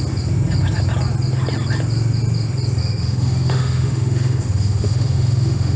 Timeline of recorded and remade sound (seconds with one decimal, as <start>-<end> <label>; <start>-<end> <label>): 0.0-2.8 recorded; 2.8-5.8 remade